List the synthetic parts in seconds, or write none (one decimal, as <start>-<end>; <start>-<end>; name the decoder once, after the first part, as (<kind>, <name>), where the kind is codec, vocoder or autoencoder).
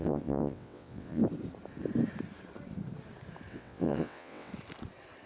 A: 0.0-1.2 (vocoder, WaveNeXt); 3.5-4.5